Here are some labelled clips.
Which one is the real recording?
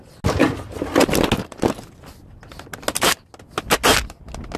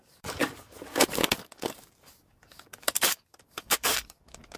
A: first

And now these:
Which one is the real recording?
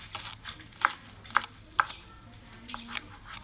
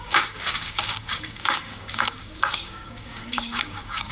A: first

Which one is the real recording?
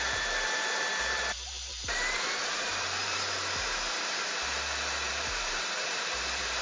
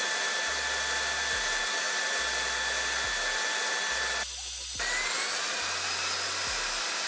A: second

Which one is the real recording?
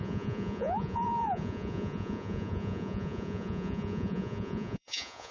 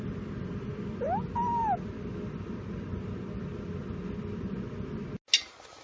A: second